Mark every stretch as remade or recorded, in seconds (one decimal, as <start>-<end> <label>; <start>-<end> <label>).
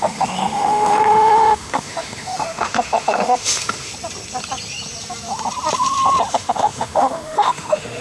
0.0-3.9 remade; 3.9-6.3 recorded; 6.3-8.0 remade